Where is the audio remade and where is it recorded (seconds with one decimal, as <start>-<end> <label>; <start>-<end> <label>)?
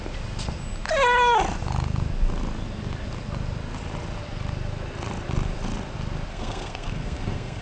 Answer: 0.0-6.3 recorded; 6.3-7.6 remade